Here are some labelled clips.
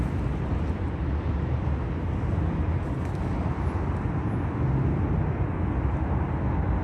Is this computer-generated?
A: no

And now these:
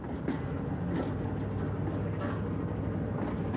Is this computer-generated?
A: no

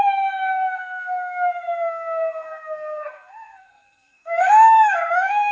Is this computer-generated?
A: yes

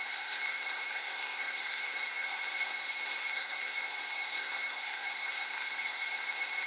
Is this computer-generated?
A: yes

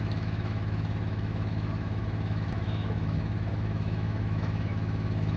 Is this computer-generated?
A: yes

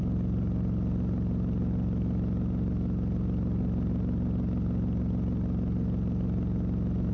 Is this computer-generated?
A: no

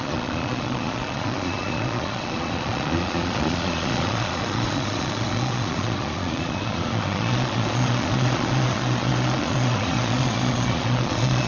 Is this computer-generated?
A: yes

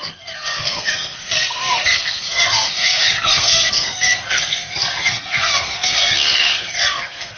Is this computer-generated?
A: yes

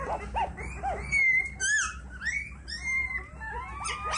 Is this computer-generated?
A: no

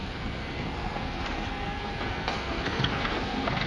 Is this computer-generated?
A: yes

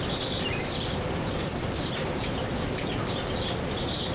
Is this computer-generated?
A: yes